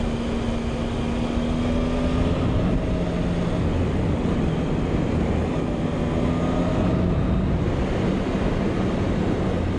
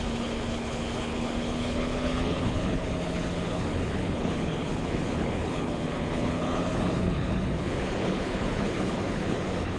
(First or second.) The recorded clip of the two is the first